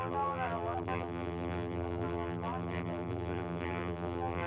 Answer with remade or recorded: remade